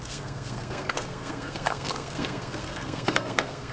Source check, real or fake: fake